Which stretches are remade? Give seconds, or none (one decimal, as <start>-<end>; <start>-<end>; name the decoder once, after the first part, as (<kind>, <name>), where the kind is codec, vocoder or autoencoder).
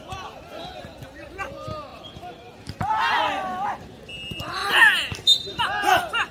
1.9-2.6 (vocoder, BigVGAN v2); 4.6-5.6